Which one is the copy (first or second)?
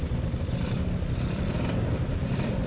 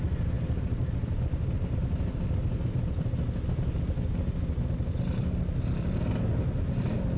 first